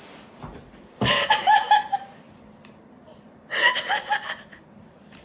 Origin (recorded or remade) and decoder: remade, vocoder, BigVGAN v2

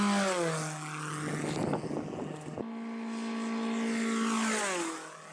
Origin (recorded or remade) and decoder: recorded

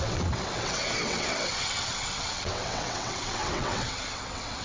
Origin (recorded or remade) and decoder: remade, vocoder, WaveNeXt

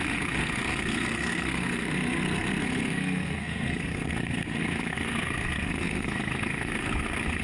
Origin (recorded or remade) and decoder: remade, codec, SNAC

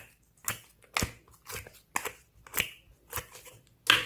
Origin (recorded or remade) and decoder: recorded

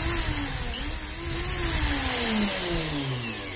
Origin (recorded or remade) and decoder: recorded